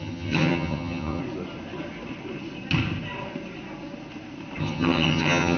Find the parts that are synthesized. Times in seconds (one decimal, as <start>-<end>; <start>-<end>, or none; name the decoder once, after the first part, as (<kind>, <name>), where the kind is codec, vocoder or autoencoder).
0.0-1.2 (vocoder, HiFi-GAN); 4.6-5.6